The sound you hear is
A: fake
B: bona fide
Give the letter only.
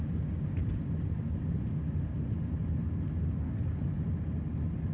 B